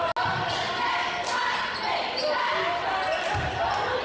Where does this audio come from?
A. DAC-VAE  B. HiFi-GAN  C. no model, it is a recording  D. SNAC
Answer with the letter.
C